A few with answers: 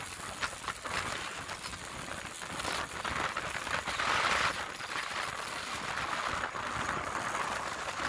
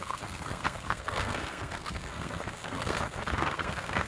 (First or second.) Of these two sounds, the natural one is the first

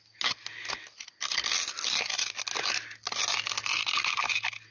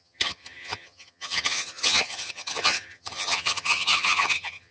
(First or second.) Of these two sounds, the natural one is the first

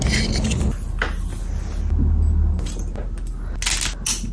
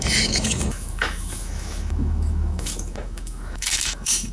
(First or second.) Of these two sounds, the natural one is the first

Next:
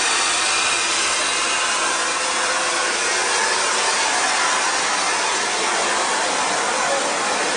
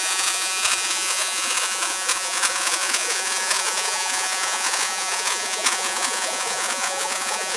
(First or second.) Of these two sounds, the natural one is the first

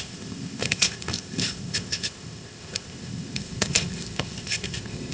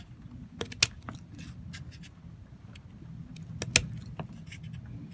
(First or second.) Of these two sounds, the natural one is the second